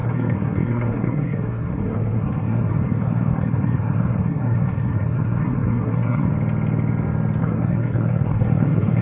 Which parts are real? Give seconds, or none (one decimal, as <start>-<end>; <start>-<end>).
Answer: 6.3-7.4